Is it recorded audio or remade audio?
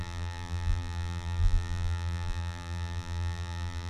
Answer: remade